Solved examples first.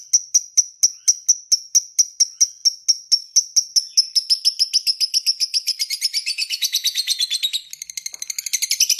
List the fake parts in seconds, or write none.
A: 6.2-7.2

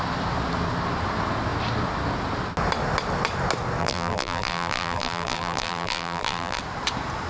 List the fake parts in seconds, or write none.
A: 3.8-6.6

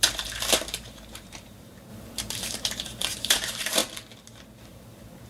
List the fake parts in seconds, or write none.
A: 0.0-3.8; 4.6-5.3

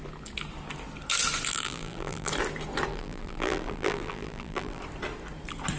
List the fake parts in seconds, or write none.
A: 1.5-2.3; 2.9-4.8

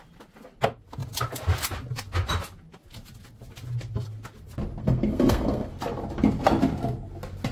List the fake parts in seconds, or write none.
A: 4.8-5.7

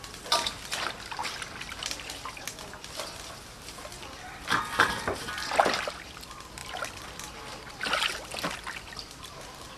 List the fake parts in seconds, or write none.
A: none

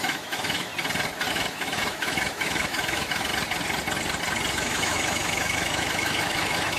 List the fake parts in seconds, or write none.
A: 0.0-0.7; 1.3-3.3; 4.5-6.8